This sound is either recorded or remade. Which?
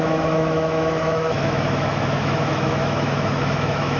remade